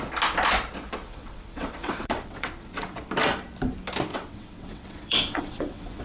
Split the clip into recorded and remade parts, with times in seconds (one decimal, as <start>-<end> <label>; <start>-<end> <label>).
0.0-1.0 recorded; 1.0-3.0 remade; 3.0-4.1 recorded; 4.1-6.0 remade